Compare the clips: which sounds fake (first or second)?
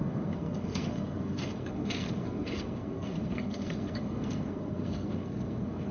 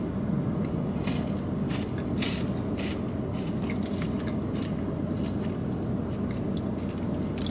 first